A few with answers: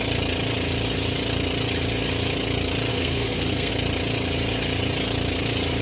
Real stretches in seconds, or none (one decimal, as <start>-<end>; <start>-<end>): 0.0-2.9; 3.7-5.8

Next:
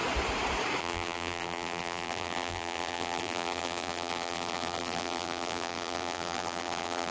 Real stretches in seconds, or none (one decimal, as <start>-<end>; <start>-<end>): 0.0-0.8

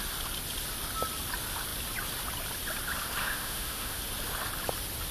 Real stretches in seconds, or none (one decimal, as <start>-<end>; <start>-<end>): 0.0-3.2; 4.0-5.1

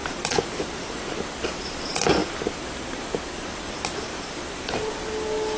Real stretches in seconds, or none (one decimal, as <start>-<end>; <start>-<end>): 1.4-2.2; 4.9-5.6